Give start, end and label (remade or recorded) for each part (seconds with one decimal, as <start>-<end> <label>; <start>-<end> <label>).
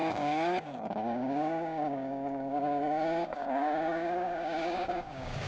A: 0.0-5.5 remade